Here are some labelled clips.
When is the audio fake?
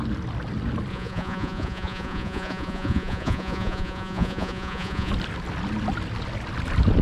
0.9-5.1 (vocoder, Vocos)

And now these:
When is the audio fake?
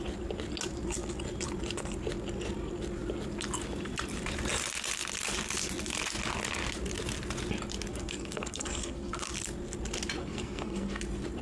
7.9-9.3 (codec, SNAC); 10.2-11.0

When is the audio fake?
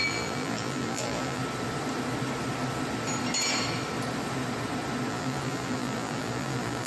0.0-1.4 (vocoder, BigVGAN v2); 5.1-6.9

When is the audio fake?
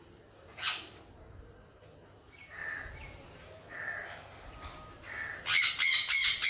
none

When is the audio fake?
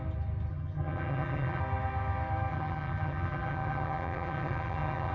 0.5-1.6 (vocoder, HiFi-GAN); 2.5-5.1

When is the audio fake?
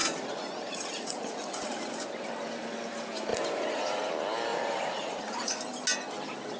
0.0-2.1 (vocoder, Vocos); 3.3-4.1; 4.5-5.6